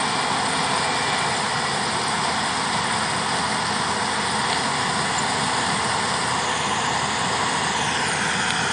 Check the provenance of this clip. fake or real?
real